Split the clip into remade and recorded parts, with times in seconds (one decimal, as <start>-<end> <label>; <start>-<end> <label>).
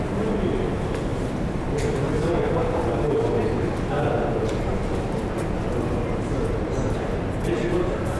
0.0-8.2 recorded